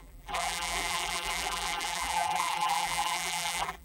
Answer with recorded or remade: remade